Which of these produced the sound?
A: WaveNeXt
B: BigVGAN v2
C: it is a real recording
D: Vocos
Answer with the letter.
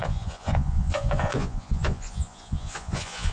D